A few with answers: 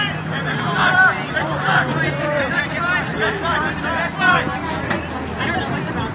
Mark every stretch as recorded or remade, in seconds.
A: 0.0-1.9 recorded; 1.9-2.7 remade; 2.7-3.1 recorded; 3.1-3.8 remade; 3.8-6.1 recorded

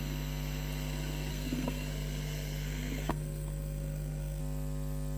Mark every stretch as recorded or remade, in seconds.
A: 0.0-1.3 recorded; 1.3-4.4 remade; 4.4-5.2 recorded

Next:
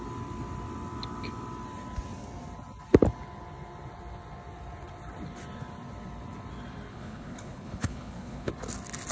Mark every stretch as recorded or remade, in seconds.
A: 0.0-6.9 recorded; 6.9-8.5 remade; 8.5-9.1 recorded

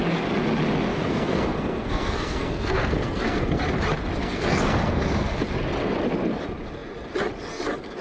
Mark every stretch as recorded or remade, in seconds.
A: 0.0-0.9 recorded; 0.9-3.6 remade; 3.6-4.2 recorded; 4.2-5.4 remade; 5.4-8.0 recorded

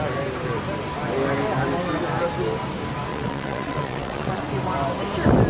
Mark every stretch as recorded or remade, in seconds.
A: 0.0-3.1 recorded; 3.1-4.4 remade; 4.4-5.5 recorded

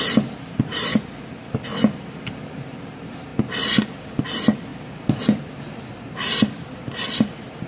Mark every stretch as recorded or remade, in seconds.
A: 0.0-7.7 recorded